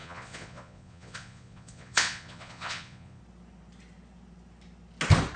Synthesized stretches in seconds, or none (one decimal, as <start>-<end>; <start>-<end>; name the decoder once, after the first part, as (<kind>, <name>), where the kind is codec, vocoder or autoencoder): 0.0-3.2 (vocoder, Vocos)